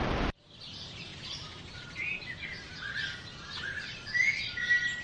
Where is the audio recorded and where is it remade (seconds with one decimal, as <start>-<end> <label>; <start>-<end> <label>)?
0.0-5.0 recorded